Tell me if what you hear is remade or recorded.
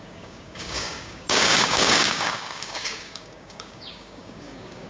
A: remade